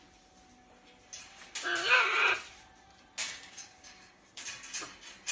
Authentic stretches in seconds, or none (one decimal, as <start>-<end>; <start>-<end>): 0.0-3.2; 4.4-5.3